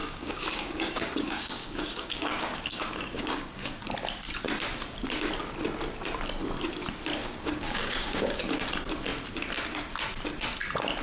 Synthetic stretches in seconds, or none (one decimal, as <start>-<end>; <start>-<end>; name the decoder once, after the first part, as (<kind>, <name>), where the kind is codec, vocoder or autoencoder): 0.0-3.8 (codec, DAC); 7.2-8.4

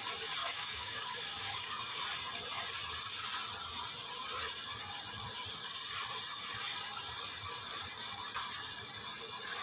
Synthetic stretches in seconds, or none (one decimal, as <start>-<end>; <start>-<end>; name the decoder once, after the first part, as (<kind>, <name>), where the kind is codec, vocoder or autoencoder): 0.4-2.0 (codec, DAC)

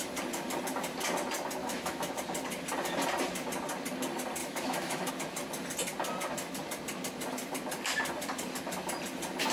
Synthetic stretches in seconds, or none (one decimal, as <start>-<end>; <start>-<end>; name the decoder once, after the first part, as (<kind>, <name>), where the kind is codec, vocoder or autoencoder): 1.6-2.1 (autoencoder, DAC-VAE); 4.4-5.1